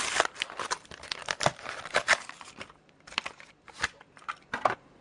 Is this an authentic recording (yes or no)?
no